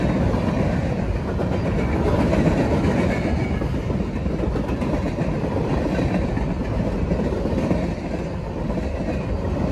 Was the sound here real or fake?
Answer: real